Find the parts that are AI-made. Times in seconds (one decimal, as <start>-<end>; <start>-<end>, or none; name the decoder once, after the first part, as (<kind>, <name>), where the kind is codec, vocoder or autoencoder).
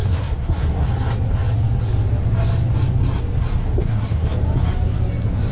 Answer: 0.0-0.9 (codec, SNAC); 3.6-4.3